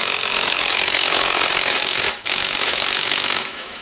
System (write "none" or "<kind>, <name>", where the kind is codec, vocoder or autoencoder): autoencoder, DAC-VAE